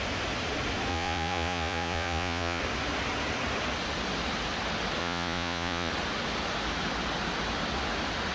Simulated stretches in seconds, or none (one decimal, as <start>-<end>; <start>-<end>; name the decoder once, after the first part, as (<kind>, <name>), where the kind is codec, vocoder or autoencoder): 0.9-2.6 (vocoder, Vocos); 5.0-5.9